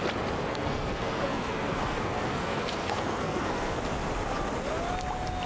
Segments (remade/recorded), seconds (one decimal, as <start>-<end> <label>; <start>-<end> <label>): 0.0-0.5 recorded; 0.5-3.8 remade; 3.8-5.5 recorded